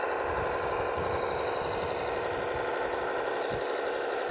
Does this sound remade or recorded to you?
recorded